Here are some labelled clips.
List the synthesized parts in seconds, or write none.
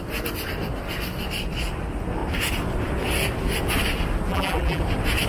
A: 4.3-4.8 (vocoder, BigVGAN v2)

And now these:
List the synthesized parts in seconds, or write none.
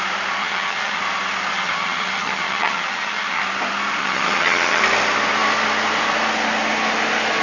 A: 0.4-1.0 (vocoder, HiFi-GAN); 1.5-3.4; 4.0-4.8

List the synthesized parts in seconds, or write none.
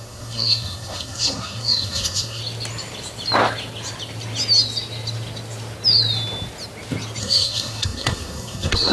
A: 0.0-2.4 (codec, SNAC); 7.2-8.9